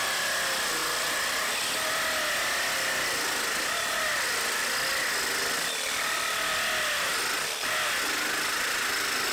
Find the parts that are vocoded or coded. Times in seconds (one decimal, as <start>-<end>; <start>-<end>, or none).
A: none